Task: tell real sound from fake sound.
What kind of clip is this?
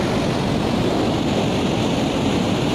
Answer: real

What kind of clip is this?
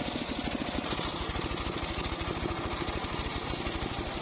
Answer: real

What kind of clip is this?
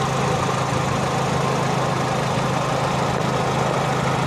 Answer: real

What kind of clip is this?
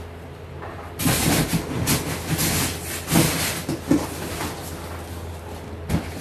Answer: real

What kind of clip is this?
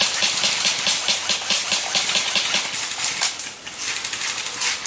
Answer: real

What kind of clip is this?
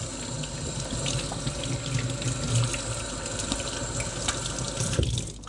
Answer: real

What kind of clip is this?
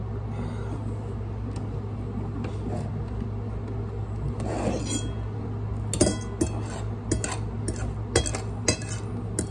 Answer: real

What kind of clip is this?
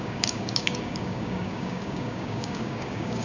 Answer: fake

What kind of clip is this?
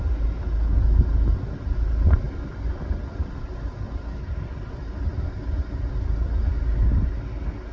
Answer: real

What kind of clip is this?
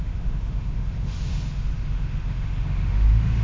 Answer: fake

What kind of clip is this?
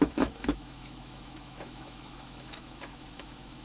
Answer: fake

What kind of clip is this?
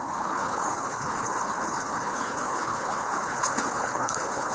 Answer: fake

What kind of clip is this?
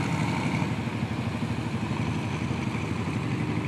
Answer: real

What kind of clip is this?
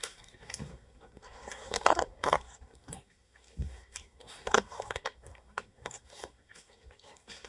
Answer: fake